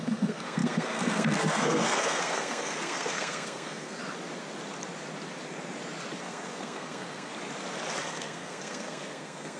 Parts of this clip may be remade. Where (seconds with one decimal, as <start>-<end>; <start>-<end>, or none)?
0.0-4.0; 6.2-7.3; 8.0-9.6